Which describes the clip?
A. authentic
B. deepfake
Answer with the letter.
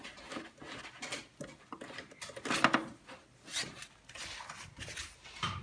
A